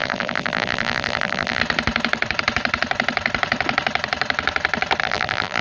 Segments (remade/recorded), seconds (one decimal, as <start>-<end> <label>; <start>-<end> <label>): 0.0-1.6 remade; 1.6-5.0 recorded; 5.0-5.6 remade